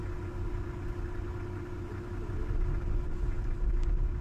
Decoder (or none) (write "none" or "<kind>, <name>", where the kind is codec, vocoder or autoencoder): none